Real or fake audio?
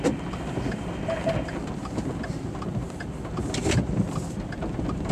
real